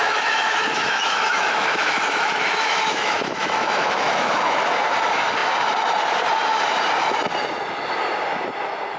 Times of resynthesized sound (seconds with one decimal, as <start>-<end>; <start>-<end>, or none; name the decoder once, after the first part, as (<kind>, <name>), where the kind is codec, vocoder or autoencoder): 0.0-4.7 (autoencoder, DAC-VAE)